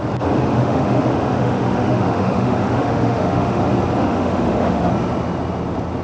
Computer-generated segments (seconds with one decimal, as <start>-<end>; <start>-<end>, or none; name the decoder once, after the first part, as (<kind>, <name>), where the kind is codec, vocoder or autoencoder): 0.5-3.6 (autoencoder, DAC-VAE); 4.0-4.9